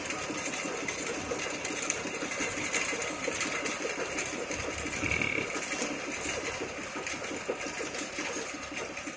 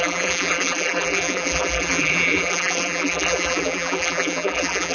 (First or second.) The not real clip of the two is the second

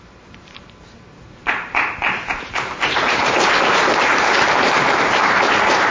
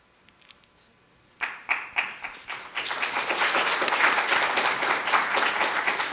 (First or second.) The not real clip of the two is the first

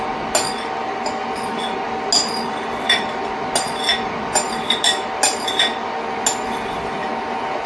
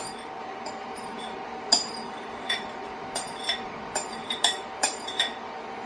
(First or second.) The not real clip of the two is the second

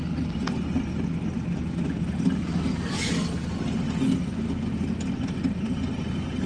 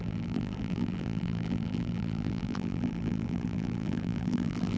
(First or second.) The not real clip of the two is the second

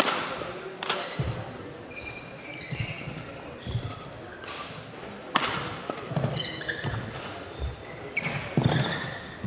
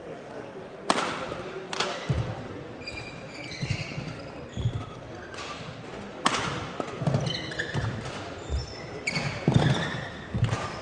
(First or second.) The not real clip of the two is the second